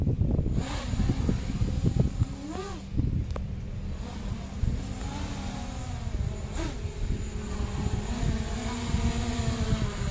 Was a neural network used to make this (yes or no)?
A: no